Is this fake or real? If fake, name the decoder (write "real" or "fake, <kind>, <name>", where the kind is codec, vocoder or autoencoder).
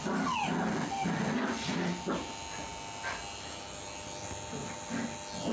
real